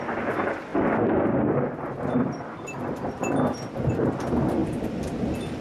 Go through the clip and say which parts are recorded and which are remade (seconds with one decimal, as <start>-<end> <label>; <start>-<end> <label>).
0.0-0.7 recorded; 0.7-4.1 remade; 4.1-5.6 recorded